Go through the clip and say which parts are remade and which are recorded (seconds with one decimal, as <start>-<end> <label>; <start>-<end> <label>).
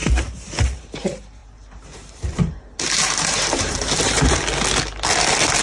0.0-1.4 recorded; 1.4-4.3 remade; 4.3-5.6 recorded